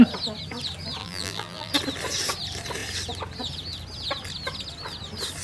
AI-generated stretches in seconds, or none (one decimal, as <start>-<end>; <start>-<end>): 1.0-1.7